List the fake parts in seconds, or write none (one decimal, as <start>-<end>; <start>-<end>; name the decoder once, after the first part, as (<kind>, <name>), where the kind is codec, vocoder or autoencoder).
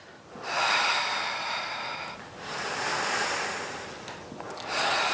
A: none